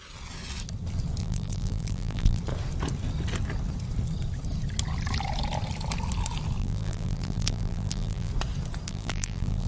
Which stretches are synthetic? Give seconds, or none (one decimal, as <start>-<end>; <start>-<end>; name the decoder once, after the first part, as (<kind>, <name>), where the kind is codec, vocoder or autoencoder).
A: 1.2-2.4 (vocoder, BigVGAN v2); 6.6-8.3; 8.9-9.7